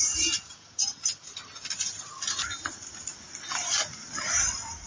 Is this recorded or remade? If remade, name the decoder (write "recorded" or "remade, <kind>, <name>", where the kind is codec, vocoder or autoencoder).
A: recorded